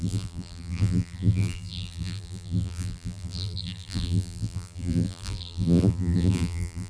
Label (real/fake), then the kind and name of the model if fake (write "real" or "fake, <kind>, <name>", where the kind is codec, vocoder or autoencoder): fake, vocoder, BigVGAN v2